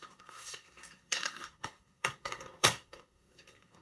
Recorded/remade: remade